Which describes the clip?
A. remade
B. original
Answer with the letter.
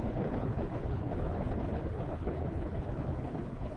A